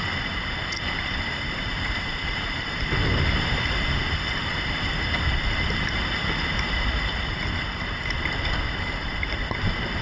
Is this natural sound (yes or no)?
no